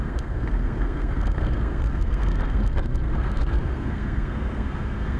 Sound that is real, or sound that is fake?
fake